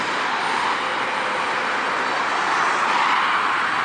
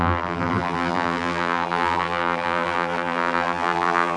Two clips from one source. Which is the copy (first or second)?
second